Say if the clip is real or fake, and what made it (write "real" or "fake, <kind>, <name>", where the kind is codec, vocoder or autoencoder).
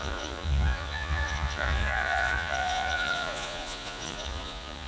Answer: fake, vocoder, Vocos